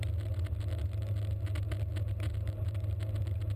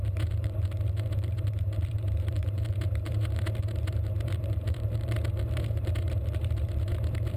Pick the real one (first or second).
first